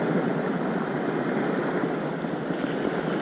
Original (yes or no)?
yes